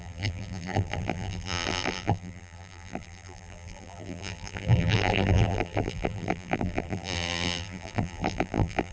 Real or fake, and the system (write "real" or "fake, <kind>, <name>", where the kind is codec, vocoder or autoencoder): fake, vocoder, BigVGAN v2